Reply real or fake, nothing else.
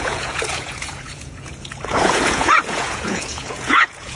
fake